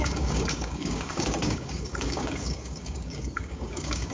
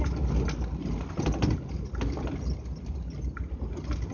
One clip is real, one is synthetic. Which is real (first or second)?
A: second